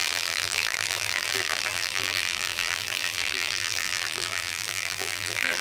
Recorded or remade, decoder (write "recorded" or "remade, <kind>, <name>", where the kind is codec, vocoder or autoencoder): remade, vocoder, BigVGAN v2